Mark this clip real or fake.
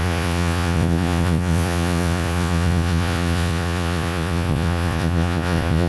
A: fake